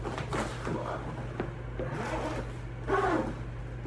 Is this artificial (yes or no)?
no